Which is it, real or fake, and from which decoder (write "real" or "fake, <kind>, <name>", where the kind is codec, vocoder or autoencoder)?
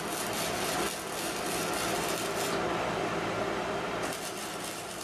real